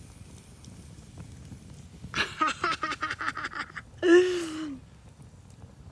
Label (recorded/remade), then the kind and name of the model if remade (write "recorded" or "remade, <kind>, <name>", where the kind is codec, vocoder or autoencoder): recorded